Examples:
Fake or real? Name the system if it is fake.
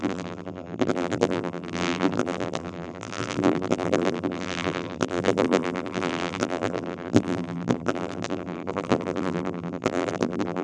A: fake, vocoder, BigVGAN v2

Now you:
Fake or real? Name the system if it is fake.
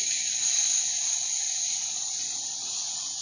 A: real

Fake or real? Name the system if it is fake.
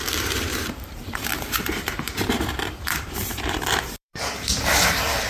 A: fake, vocoder, BigVGAN v2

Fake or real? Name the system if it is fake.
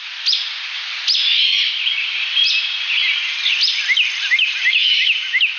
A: real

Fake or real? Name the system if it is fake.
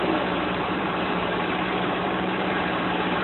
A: fake, vocoder, BigVGAN v2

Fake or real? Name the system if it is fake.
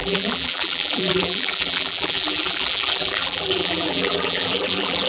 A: fake, vocoder, BigVGAN v2